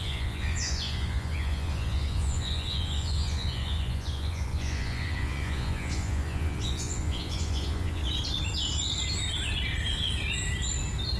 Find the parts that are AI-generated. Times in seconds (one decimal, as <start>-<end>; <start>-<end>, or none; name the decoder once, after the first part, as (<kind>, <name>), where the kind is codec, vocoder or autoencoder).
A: 0.0-8.0 (vocoder, Vocos)